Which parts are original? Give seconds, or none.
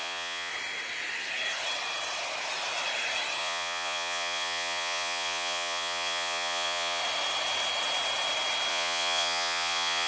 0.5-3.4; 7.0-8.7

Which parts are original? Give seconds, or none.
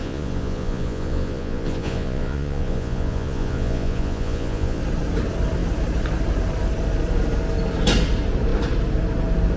4.8-9.6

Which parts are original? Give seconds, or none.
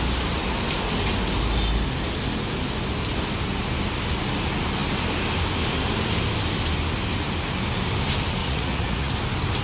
0.0-8.4; 9.1-9.6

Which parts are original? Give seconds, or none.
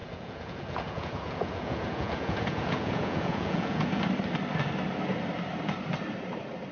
4.0-6.7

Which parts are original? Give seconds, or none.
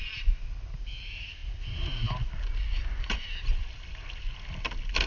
0.0-5.1